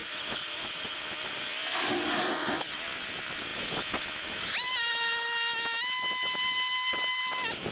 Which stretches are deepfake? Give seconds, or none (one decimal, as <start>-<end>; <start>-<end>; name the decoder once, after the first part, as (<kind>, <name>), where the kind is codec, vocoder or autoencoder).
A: 0.0-1.0 (vocoder, Vocos)